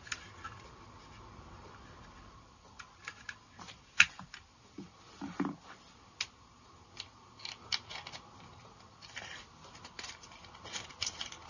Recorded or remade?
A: recorded